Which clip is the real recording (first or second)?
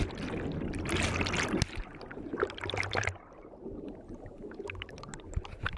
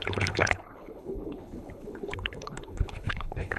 first